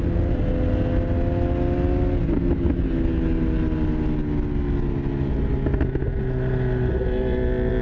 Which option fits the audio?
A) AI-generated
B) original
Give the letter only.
B